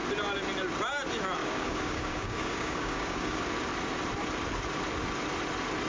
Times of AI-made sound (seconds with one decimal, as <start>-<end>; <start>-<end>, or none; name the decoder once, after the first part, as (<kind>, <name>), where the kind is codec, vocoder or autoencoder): 1.4-3.4 (codec, DAC)

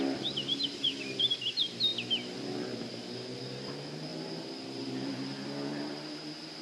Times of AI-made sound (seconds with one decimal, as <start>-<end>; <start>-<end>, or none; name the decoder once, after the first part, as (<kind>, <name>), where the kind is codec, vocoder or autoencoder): none